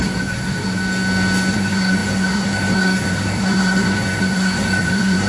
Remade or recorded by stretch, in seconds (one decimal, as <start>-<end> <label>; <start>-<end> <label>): 0.0-0.8 remade; 0.8-1.5 recorded; 1.5-5.3 remade

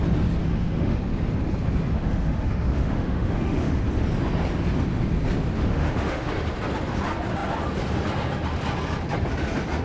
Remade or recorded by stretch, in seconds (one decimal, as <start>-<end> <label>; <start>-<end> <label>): 0.0-0.4 recorded; 0.4-1.0 remade; 1.0-1.9 recorded; 1.9-3.8 remade; 3.8-5.6 recorded; 5.6-6.3 remade; 6.3-9.8 recorded

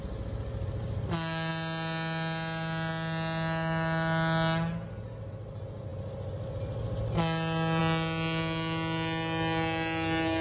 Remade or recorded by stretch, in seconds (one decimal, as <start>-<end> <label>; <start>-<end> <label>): 0.0-10.4 recorded